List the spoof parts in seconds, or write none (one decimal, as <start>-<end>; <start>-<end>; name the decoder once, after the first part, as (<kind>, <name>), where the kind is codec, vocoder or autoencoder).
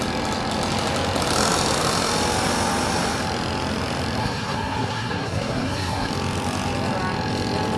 4.2-6.1 (codec, SNAC)